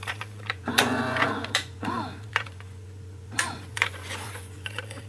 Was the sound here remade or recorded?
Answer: remade